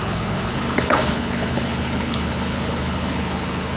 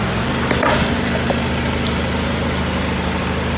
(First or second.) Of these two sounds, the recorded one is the second